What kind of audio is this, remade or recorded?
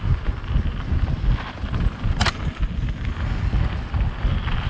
recorded